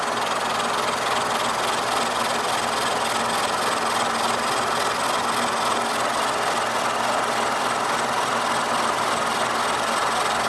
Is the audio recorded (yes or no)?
yes